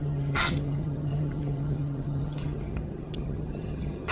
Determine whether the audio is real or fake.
fake